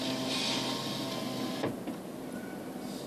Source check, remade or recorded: recorded